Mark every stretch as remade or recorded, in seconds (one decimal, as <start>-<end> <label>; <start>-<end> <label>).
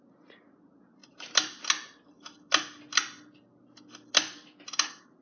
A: 0.0-5.2 recorded